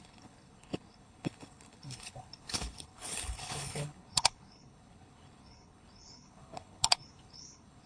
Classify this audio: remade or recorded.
remade